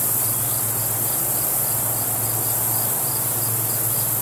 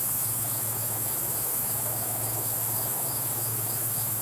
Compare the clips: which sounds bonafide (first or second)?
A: first